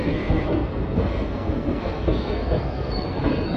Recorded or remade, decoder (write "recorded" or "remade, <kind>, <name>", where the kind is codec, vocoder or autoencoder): remade, codec, SNAC